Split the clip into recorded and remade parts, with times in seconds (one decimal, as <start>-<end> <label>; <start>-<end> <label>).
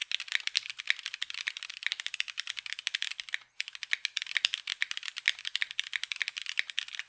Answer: 0.0-7.1 recorded